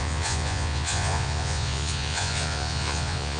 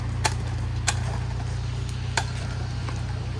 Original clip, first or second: second